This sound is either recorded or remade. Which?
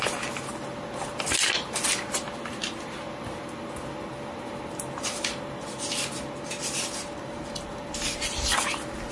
recorded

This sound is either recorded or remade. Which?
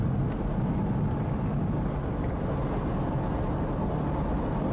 recorded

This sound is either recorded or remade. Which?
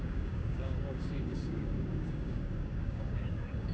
remade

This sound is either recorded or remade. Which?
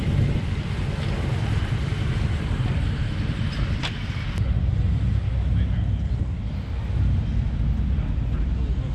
recorded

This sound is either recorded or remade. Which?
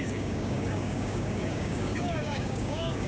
remade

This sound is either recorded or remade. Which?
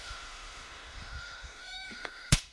remade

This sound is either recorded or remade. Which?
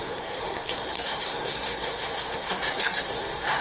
remade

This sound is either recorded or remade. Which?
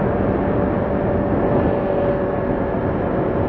recorded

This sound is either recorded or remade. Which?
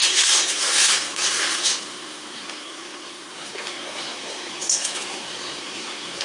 remade